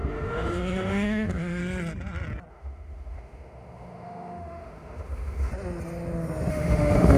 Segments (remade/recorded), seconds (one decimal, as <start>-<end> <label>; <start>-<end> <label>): 0.0-1.6 remade; 1.6-2.5 recorded; 2.5-5.5 remade; 5.5-6.5 recorded; 6.5-7.2 remade